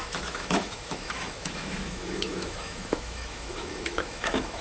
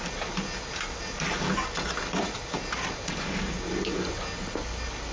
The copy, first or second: first